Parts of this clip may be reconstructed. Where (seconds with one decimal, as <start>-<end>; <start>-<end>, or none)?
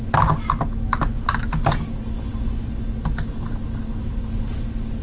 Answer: none